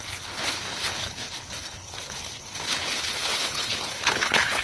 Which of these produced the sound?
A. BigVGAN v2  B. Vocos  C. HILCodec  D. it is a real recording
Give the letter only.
C